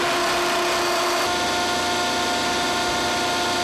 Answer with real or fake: real